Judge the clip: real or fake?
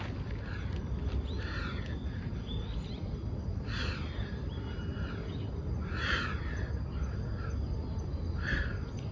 real